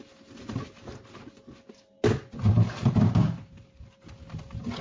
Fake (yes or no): no